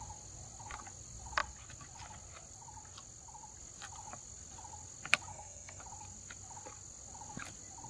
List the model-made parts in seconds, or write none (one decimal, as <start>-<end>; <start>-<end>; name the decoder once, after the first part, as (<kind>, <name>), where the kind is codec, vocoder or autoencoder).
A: 5.3-5.8 (codec, SNAC)